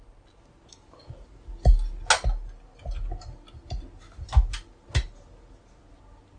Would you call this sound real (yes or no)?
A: yes